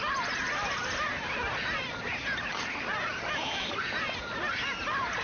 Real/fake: real